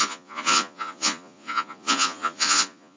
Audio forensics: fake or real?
fake